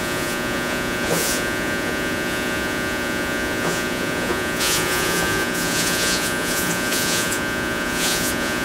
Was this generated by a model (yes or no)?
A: yes